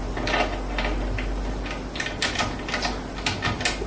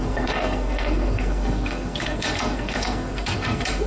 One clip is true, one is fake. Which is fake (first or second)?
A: second